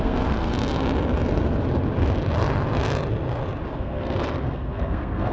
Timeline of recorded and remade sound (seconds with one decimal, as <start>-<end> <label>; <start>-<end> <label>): 0.0-0.5 remade; 0.5-3.7 recorded; 3.7-5.3 remade